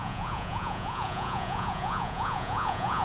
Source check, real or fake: fake